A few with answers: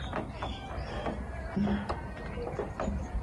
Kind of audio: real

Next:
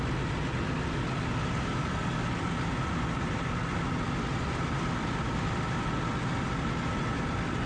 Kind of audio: real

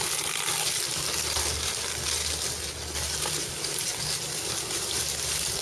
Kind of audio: real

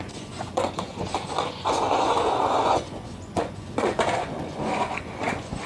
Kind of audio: fake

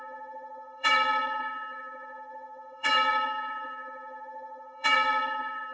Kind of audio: fake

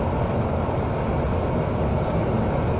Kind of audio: real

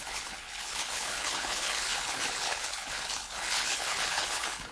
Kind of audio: fake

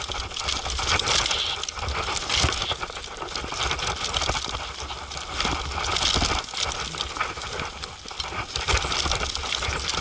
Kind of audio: real